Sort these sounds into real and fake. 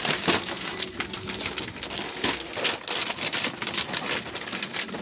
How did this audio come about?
real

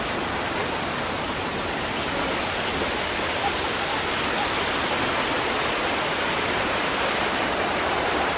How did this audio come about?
real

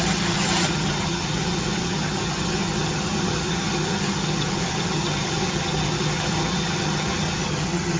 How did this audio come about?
fake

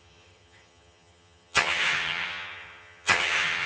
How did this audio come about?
fake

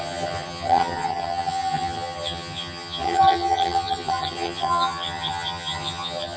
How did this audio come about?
fake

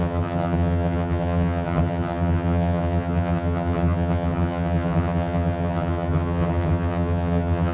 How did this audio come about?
fake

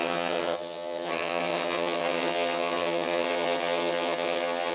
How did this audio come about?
fake